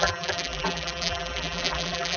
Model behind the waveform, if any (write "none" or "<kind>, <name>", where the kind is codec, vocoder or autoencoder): vocoder, BigVGAN v2